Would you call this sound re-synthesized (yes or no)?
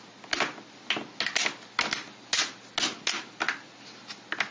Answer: no